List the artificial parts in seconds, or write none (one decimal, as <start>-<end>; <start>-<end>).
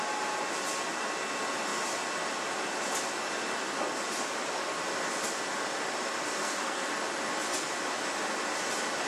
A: 6.4-6.9